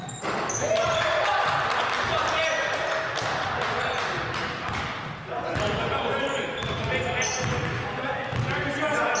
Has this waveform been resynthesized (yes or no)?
no